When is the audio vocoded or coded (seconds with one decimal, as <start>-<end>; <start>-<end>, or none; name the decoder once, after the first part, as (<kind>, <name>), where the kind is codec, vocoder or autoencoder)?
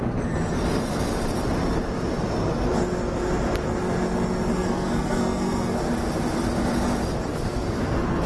4.5-5.9 (codec, SNAC); 7.3-8.3